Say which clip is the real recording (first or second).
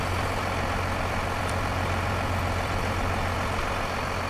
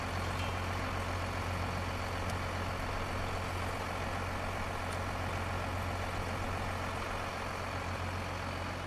second